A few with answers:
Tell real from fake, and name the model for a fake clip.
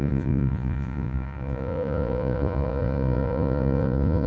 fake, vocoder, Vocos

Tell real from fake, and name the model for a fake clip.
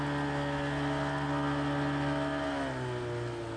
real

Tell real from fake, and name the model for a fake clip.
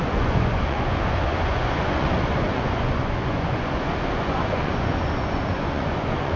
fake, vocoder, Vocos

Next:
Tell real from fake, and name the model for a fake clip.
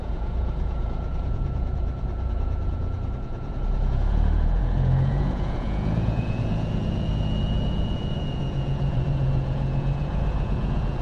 fake, vocoder, Vocos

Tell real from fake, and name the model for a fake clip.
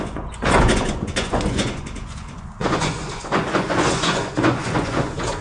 fake, vocoder, Vocos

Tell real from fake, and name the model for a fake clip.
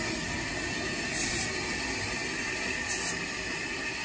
real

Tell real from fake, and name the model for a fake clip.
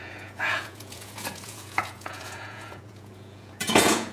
fake, vocoder, Vocos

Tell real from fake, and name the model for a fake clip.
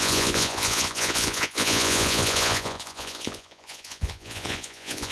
fake, vocoder, Vocos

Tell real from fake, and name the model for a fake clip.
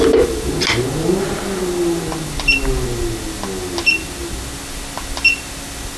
real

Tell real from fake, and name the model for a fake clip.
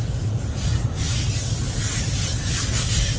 real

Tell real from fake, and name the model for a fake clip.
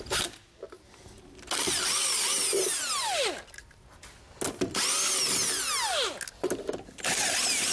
real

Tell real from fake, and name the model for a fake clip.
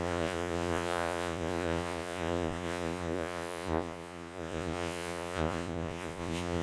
fake, vocoder, Vocos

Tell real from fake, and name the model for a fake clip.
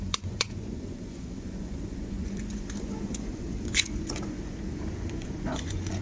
fake, vocoder, Vocos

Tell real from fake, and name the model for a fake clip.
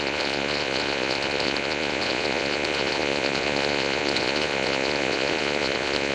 fake, vocoder, Vocos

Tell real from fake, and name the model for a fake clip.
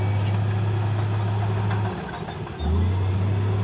real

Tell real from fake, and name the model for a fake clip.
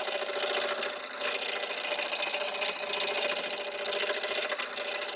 real